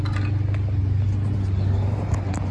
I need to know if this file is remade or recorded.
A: recorded